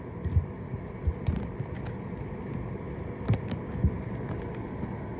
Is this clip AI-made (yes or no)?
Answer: no